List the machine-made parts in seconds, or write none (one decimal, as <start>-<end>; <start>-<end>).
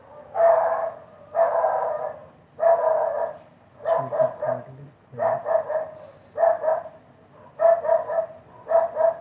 none